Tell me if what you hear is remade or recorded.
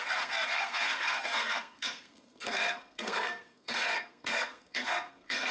remade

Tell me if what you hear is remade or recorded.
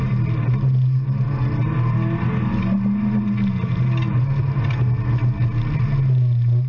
recorded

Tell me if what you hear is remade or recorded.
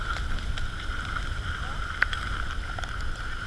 recorded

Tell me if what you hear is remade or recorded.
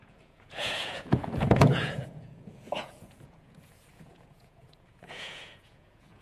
remade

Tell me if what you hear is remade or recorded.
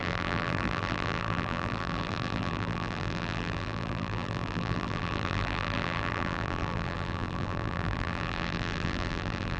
remade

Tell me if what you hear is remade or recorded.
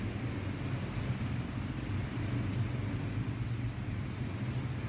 recorded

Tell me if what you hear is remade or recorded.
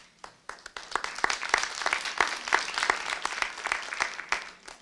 recorded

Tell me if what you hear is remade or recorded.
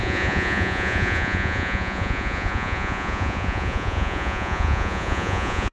remade